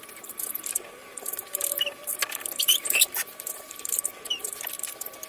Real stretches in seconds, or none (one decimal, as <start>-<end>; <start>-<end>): none